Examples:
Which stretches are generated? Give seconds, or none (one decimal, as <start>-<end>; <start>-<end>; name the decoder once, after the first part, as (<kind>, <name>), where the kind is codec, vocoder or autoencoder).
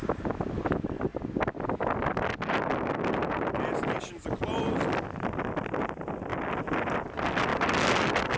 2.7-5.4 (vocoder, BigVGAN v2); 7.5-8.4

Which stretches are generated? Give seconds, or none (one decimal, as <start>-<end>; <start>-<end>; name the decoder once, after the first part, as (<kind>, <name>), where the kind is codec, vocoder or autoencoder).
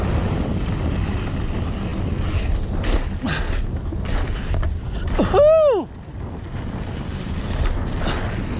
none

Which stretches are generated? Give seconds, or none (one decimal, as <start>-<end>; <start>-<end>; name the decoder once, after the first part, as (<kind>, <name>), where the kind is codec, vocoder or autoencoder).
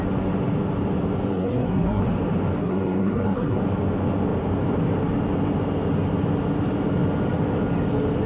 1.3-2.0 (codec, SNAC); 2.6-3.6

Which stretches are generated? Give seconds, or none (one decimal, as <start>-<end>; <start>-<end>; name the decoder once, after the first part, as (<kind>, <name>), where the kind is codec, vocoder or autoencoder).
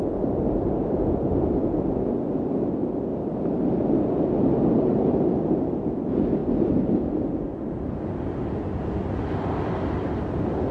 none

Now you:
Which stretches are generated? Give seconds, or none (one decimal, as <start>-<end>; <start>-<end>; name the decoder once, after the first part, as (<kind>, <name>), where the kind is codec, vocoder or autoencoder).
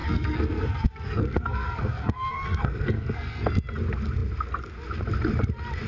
0.0-3.5 (codec, SNAC)